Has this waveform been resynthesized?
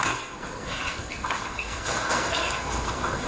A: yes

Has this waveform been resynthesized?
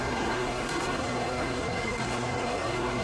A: yes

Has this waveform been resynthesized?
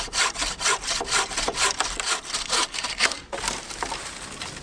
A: no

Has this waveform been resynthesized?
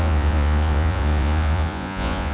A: yes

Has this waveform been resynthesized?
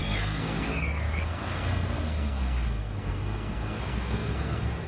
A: yes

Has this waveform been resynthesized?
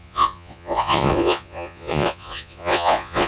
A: yes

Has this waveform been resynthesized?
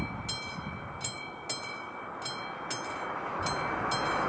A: no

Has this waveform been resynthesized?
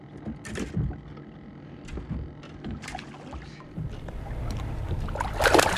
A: no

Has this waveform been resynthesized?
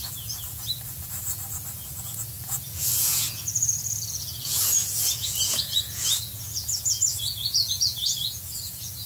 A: yes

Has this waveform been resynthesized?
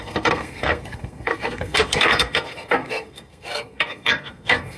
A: yes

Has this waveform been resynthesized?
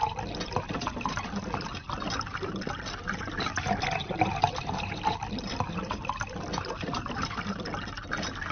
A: no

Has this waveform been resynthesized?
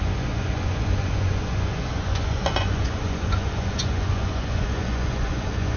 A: yes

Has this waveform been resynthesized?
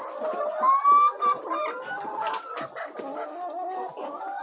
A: no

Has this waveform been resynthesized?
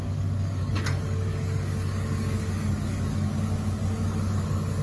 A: yes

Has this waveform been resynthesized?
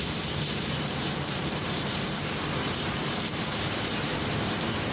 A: yes